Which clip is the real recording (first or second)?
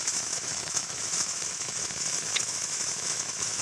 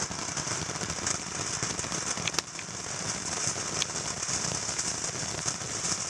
second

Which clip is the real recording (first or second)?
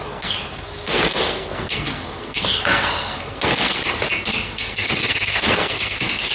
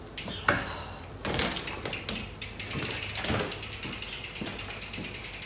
second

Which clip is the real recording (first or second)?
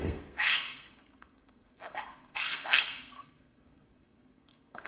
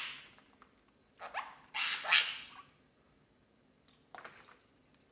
second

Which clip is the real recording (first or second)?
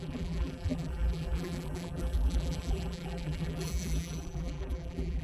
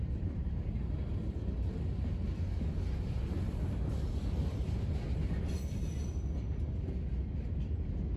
second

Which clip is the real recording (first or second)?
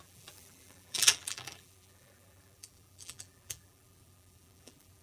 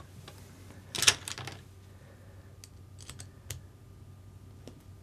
second